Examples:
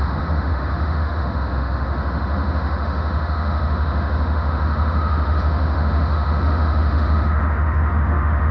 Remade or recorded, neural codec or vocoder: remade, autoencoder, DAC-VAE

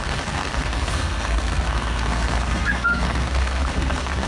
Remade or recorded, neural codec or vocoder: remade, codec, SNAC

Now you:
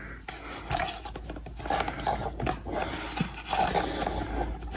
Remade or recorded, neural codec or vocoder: recorded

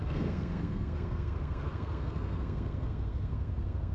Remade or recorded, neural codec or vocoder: remade, codec, SNAC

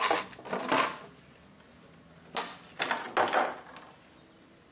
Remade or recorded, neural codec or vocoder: recorded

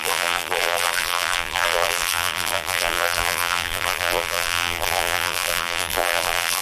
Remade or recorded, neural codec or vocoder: remade, vocoder, BigVGAN v2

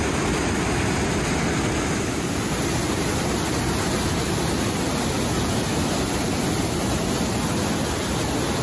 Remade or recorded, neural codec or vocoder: recorded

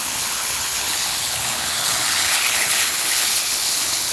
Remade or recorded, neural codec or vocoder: remade, codec, HILCodec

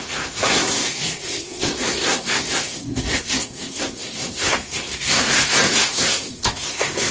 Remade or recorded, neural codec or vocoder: remade, codec, SNAC